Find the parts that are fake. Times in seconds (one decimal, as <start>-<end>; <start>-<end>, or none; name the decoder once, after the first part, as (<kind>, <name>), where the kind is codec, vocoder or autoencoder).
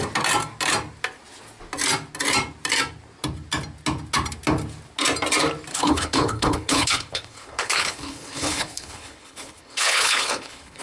5.7-10.8 (codec, HILCodec)